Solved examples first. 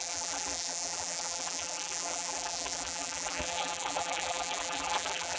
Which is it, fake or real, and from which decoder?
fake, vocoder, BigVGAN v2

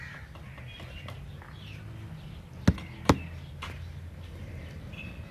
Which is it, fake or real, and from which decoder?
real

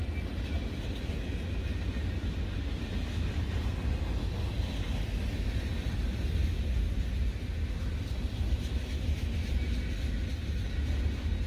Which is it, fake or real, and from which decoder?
real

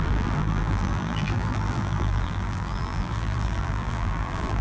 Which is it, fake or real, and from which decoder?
fake, vocoder, BigVGAN v2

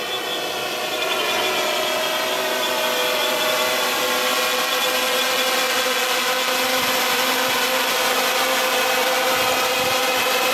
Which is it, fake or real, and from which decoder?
real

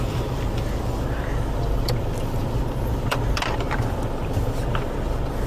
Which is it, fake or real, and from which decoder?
fake, vocoder, BigVGAN v2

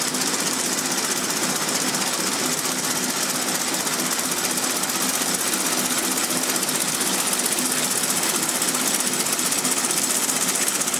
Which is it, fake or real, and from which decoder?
real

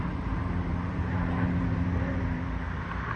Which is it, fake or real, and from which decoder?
fake, vocoder, BigVGAN v2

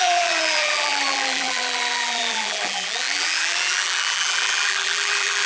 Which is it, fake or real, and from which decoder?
fake, vocoder, BigVGAN v2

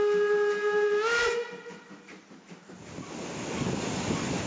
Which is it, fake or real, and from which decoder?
real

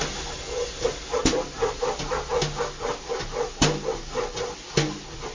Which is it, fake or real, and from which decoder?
real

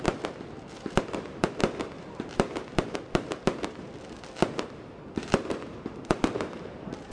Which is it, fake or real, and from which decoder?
fake, vocoder, BigVGAN v2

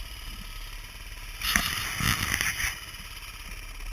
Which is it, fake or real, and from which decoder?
real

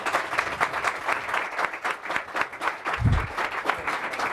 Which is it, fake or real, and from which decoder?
real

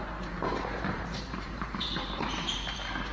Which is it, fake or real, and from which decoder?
fake, vocoder, BigVGAN v2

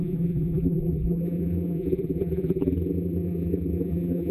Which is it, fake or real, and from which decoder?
fake, vocoder, BigVGAN v2